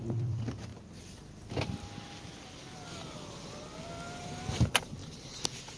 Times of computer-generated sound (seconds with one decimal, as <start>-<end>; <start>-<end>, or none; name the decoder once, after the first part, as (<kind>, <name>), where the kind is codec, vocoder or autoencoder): 0.0-0.7 (vocoder, BigVGAN v2); 1.5-5.0